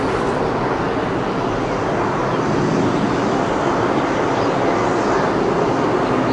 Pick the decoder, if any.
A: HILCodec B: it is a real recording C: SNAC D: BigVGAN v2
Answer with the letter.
B